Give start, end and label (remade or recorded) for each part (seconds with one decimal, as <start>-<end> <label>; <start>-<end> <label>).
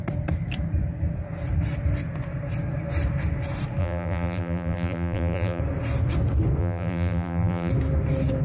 0.0-3.8 recorded; 3.8-5.6 remade; 5.6-6.6 recorded; 6.6-7.7 remade; 7.7-8.4 recorded